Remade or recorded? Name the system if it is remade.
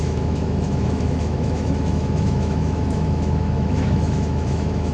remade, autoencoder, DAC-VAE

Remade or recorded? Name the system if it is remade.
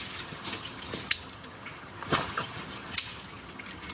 remade, vocoder, HiFi-GAN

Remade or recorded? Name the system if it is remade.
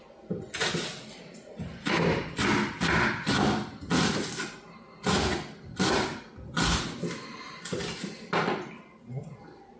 recorded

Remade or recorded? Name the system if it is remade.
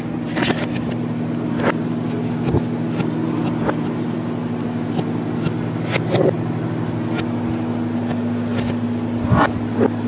recorded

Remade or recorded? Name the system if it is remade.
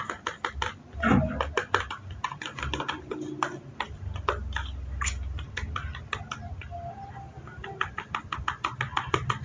recorded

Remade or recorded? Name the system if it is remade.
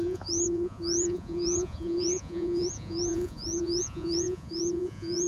remade, vocoder, Vocos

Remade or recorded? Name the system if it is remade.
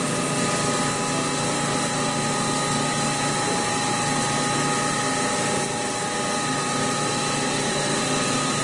recorded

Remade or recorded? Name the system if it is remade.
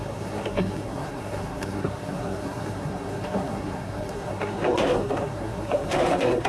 remade, codec, SNAC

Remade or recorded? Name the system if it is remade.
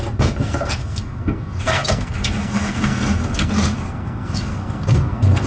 remade, codec, SNAC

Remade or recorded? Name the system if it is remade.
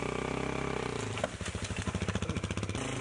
recorded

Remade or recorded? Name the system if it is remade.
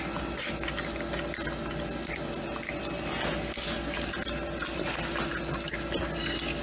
recorded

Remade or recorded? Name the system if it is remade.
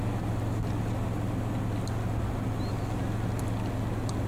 recorded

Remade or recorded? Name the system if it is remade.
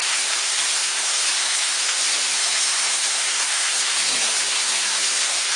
remade, codec, SNAC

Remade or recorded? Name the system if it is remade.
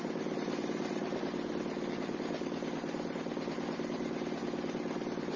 recorded